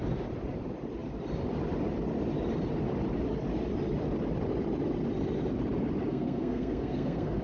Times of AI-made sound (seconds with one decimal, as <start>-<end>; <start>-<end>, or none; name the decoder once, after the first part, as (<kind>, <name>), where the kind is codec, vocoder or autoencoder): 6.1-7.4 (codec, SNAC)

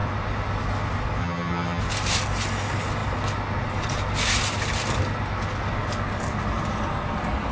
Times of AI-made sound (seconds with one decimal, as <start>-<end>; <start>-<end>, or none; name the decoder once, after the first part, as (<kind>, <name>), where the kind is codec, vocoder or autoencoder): 1.2-1.8 (vocoder, HiFi-GAN)

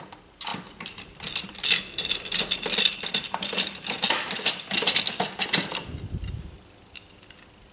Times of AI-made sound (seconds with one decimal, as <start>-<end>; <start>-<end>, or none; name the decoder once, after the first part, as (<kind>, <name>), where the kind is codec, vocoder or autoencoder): 0.5-5.0 (vocoder, BigVGAN v2); 5.7-7.3

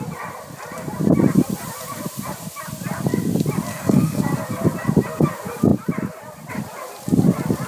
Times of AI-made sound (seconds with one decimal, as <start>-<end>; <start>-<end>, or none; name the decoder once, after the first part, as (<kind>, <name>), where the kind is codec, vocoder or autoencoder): 3.7-4.2 (codec, SNAC)

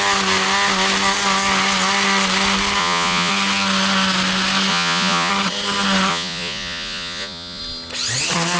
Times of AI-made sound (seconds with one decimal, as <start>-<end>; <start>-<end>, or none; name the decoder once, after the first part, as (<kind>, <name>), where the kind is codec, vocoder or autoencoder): 2.8-3.3 (vocoder, Vocos); 4.7-5.3; 6.1-7.6

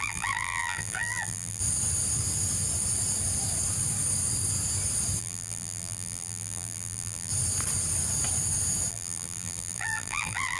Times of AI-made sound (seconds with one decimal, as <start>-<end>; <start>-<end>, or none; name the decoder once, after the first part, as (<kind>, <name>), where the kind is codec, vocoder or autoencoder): 0.0-1.6 (vocoder, BigVGAN v2); 5.2-7.3; 8.9-10.6